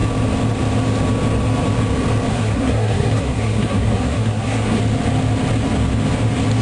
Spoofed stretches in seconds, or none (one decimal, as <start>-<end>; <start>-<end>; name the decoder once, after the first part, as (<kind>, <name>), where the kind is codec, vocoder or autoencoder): 2.3-4.8 (codec, SNAC)